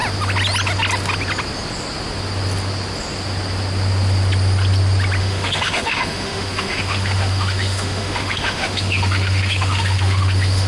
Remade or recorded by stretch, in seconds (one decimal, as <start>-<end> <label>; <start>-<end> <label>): 0.0-5.2 recorded; 5.2-10.7 remade